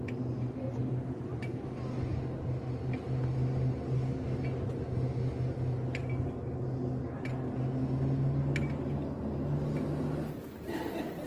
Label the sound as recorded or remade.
recorded